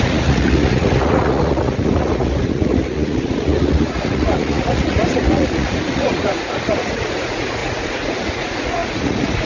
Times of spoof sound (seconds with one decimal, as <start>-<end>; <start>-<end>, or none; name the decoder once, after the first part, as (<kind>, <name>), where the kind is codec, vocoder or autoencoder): 0.0-9.5 (vocoder, Vocos)